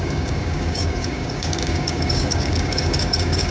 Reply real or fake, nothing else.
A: fake